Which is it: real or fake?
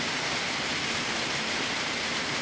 real